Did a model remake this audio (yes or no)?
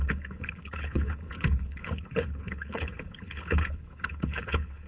yes